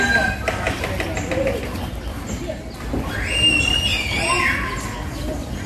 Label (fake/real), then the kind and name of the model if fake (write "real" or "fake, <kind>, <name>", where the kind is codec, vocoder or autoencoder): real